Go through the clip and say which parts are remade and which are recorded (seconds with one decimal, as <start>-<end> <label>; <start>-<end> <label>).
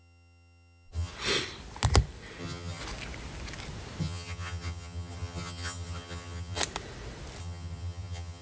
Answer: 0.0-1.1 remade; 1.1-2.4 recorded; 2.4-2.8 remade; 2.8-4.0 recorded; 4.0-6.6 remade; 6.6-7.4 recorded; 7.4-8.4 remade